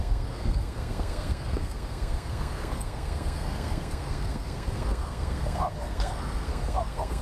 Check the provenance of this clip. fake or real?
fake